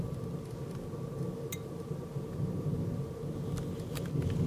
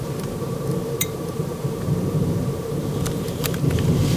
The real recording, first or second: first